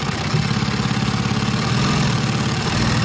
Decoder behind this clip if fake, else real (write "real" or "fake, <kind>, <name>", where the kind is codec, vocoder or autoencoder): real